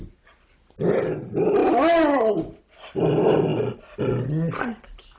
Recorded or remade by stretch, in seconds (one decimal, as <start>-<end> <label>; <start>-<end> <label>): 0.0-1.6 recorded; 1.6-2.6 remade; 2.6-5.2 recorded